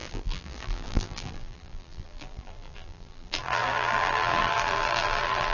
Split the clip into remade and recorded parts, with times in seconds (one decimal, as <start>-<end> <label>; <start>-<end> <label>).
0.0-5.5 remade